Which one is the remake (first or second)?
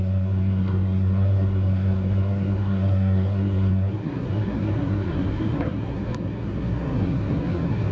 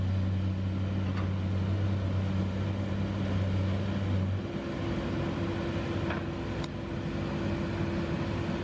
first